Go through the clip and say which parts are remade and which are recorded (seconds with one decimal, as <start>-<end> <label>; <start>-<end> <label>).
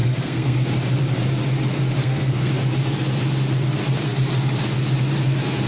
0.0-0.6 remade; 0.6-2.0 recorded; 2.0-2.5 remade; 2.5-5.7 recorded